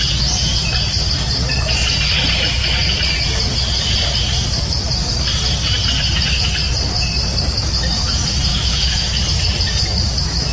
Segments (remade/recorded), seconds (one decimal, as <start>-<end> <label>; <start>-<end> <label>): 0.0-8.5 recorded; 8.5-9.2 remade; 9.2-10.5 recorded

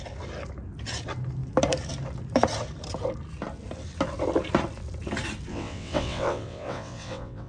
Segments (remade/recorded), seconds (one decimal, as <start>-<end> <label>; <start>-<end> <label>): 0.0-5.5 recorded; 5.5-7.5 remade